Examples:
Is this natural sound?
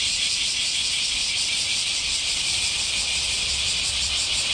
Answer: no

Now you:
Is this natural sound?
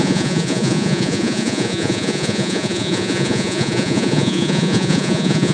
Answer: no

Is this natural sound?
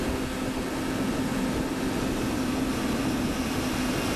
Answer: yes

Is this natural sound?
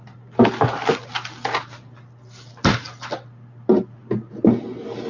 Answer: yes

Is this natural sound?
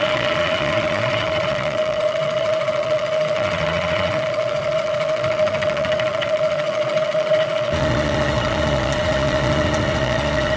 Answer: no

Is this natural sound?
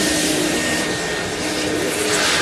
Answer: yes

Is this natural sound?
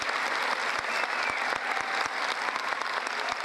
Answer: yes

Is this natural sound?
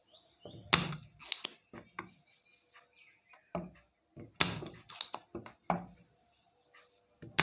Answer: yes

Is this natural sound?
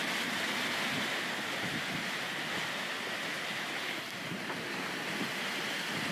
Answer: yes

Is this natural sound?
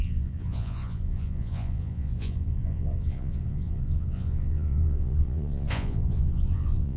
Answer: no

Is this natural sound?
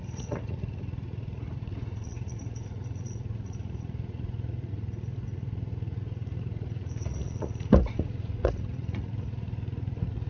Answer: no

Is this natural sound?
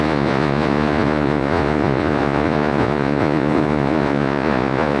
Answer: no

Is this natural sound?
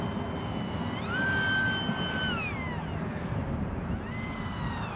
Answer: yes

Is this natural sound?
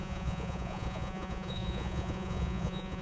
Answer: no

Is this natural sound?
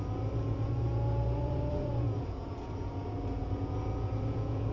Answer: no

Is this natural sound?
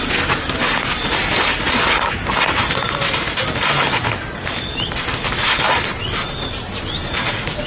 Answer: yes